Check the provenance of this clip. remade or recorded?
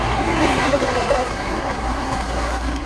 remade